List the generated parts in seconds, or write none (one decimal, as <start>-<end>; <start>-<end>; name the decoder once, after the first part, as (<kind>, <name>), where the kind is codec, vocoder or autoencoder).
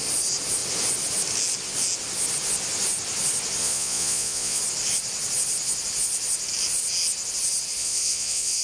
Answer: 3.6-4.6 (vocoder, Vocos); 7.8-8.6